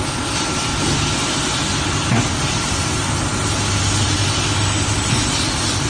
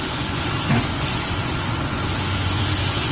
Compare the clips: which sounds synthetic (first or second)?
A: second